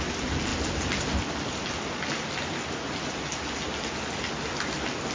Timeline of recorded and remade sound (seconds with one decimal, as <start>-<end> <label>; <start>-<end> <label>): 0.0-5.1 recorded